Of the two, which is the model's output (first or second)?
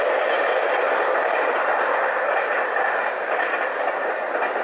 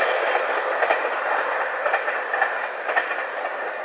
first